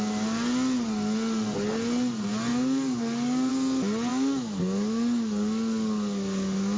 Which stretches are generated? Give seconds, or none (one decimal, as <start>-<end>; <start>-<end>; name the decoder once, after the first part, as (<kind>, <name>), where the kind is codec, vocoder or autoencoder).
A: 2.5-3.5 (codec, DAC); 4.1-6.8